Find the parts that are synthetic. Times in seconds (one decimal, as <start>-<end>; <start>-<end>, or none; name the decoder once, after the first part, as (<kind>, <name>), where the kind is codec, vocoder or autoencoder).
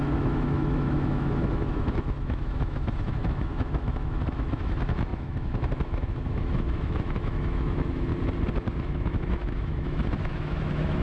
0.0-8.1 (autoencoder, DAC-VAE); 8.8-11.0